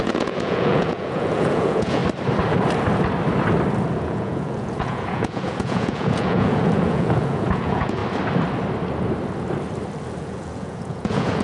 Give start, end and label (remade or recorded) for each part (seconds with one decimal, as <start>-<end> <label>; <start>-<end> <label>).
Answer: 0.0-2.0 remade; 2.0-4.0 recorded; 4.0-8.0 remade; 8.0-10.2 recorded; 10.2-11.4 remade

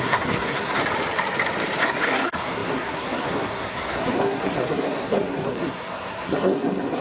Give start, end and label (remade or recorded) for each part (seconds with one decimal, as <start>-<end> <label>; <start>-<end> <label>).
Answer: 0.0-0.8 remade; 0.8-1.8 recorded; 1.8-7.0 remade

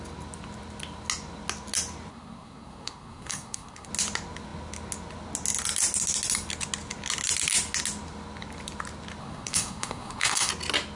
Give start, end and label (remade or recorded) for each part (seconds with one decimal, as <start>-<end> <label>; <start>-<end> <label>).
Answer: 0.0-2.1 recorded; 2.1-3.9 remade; 3.9-9.2 recorded; 9.2-10.5 remade; 10.5-11.0 recorded

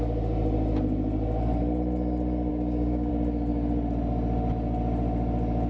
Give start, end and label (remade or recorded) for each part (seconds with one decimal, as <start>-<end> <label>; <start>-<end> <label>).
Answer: 0.0-2.5 recorded; 2.5-3.1 remade; 3.1-5.7 recorded

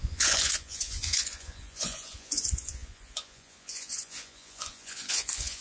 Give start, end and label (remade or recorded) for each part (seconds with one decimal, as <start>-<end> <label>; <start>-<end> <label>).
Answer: 0.0-5.6 remade

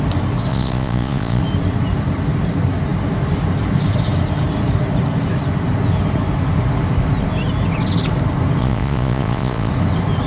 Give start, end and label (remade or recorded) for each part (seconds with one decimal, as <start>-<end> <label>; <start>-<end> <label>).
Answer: 0.0-0.5 recorded; 0.5-1.4 remade; 1.4-8.6 recorded; 8.6-9.7 remade; 9.7-10.3 recorded